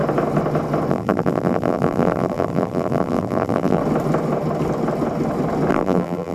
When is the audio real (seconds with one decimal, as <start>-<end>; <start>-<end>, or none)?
0.0-0.9; 3.8-5.7